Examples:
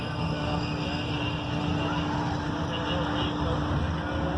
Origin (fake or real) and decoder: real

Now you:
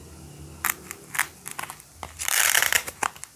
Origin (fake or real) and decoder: real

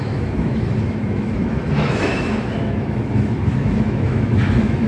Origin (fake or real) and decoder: fake, autoencoder, DAC-VAE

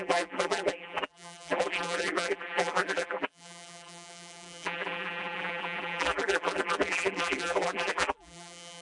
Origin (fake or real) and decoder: fake, vocoder, BigVGAN v2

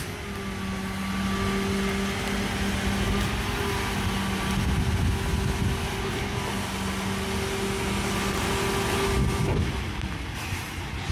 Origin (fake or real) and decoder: real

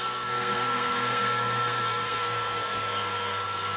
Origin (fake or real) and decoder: fake, codec, SNAC